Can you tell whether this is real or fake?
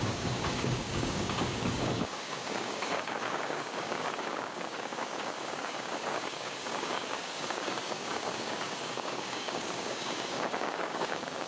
fake